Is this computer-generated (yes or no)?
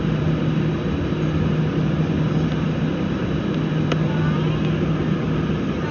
no